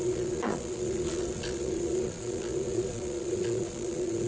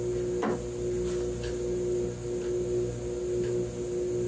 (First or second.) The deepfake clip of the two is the first